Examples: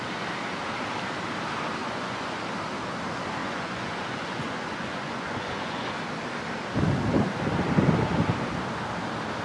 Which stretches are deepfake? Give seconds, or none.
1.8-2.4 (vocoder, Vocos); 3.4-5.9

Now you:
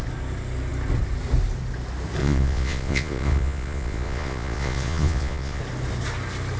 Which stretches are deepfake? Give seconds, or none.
2.2-5.6 (vocoder, Vocos)

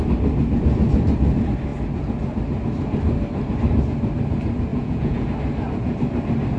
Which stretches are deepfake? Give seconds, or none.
4.7-5.3 (vocoder, Vocos)

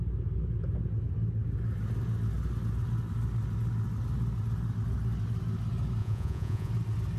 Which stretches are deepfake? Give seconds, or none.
6.0-6.7 (vocoder, Vocos)

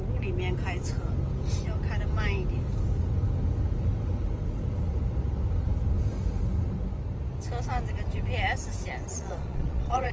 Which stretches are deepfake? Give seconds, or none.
9.1-10.1 (vocoder, Vocos)

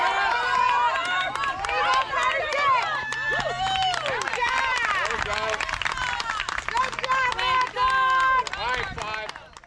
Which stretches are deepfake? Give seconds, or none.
none